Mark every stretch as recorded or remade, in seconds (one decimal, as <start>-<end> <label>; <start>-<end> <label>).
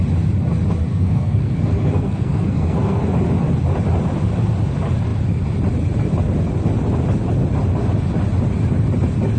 0.0-0.9 recorded; 0.9-3.0 remade; 3.0-9.4 recorded